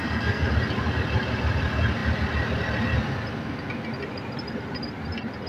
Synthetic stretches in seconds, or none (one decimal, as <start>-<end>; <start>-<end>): 0.0-0.5